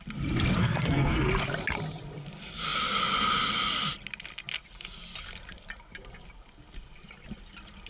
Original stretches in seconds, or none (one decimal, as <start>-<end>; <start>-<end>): 0.0-0.6; 1.3-7.9